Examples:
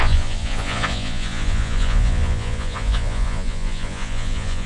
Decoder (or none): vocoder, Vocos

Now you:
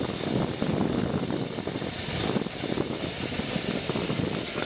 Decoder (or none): none